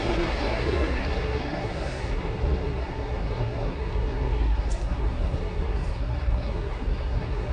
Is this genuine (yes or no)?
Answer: no